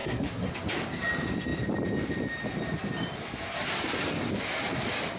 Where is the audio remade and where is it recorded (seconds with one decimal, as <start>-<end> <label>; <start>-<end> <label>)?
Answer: 0.0-0.5 remade; 0.5-5.2 recorded